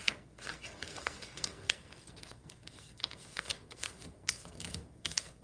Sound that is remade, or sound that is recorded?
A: remade